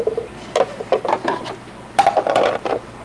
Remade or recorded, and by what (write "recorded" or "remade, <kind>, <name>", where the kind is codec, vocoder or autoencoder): recorded